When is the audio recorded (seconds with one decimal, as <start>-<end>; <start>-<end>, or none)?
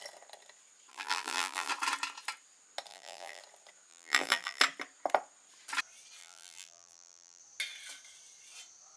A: 0.0-0.9; 1.7-2.9; 3.4-3.9; 4.6-6.2; 7.4-9.0